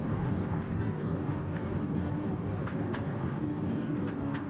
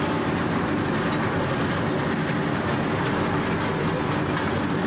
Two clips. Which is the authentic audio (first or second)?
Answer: second